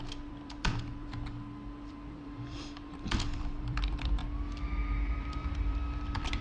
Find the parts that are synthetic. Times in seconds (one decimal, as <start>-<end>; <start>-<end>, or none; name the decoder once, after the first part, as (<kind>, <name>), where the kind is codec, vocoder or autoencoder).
0.0-4.2 (vocoder, BigVGAN v2); 5.2-6.4